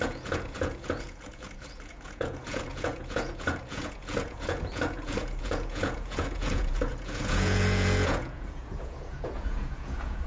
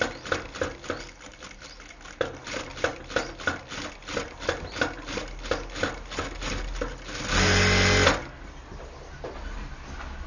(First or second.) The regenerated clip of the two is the first